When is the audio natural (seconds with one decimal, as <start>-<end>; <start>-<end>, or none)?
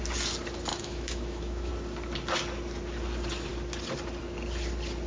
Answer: 0.0-0.7; 1.7-5.1